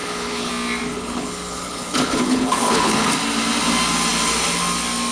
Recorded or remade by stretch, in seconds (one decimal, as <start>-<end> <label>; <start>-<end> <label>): 0.0-0.5 remade; 0.5-0.9 recorded; 0.9-3.1 remade; 3.1-5.1 recorded